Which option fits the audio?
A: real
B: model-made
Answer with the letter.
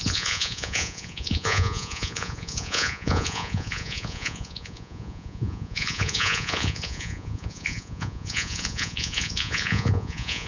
B